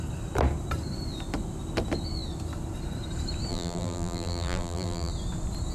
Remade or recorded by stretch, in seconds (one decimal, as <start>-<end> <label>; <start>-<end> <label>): 0.0-3.5 recorded; 3.5-5.1 remade; 5.1-5.7 recorded